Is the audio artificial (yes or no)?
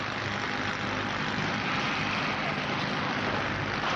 no